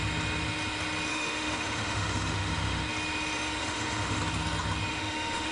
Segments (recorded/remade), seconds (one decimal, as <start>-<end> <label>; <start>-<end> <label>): 0.0-1.1 recorded; 1.1-2.8 remade; 2.8-3.6 recorded; 3.6-4.2 remade; 4.2-4.9 recorded; 4.9-5.5 remade